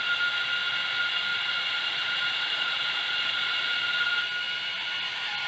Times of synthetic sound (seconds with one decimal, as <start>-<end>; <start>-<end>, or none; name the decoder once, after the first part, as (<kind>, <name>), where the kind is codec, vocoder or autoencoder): 1.3-3.6 (vocoder, Vocos)